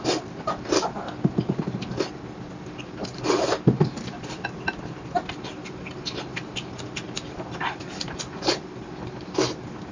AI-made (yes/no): no